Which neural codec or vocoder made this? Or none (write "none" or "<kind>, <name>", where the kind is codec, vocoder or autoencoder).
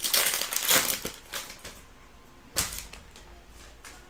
none